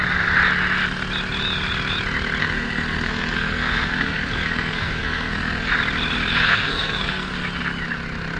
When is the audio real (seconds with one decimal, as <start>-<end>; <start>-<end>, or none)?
0.0-2.4; 5.7-6.3; 7.3-8.4